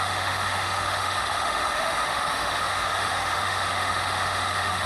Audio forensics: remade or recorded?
remade